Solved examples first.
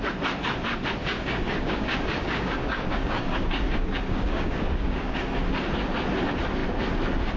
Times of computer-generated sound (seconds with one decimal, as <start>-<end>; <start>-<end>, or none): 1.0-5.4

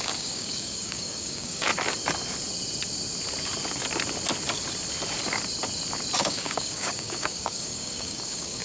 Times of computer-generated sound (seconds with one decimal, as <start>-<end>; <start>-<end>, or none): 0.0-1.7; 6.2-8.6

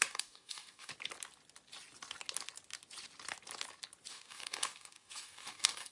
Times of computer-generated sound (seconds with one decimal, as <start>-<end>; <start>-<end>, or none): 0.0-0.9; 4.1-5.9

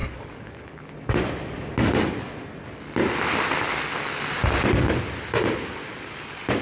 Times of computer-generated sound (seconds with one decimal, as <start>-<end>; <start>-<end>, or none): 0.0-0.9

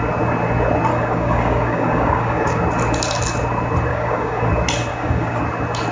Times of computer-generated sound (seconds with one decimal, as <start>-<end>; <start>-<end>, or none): 0.9-2.6; 3.9-4.5; 4.9-5.4